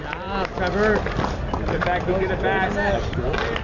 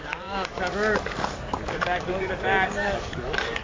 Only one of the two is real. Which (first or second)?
first